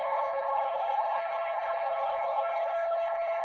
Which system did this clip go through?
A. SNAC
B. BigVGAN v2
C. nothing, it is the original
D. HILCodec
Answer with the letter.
D